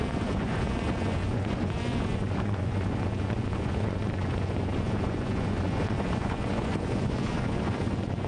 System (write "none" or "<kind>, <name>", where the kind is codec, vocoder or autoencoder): vocoder, Vocos